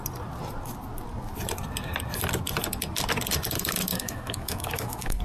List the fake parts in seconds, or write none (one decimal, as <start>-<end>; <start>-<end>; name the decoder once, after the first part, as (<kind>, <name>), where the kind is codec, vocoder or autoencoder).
3.9-5.2 (autoencoder, DAC-VAE)